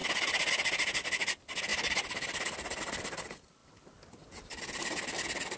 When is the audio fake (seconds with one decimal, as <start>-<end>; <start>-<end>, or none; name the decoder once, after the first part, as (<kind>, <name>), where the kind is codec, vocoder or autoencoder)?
none